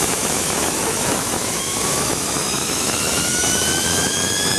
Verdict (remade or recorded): remade